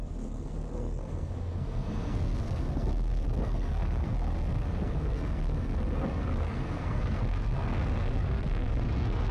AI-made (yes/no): yes